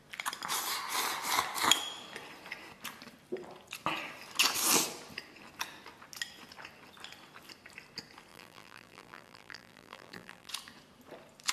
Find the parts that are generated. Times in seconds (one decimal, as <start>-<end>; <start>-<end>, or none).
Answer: 8.3-10.5